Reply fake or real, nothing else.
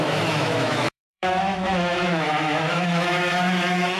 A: fake